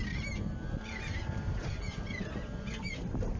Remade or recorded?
remade